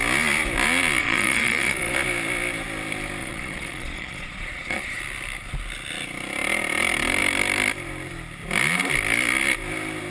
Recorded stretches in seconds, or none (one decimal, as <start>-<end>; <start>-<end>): 0.0-1.0; 1.9-3.2; 5.0-10.1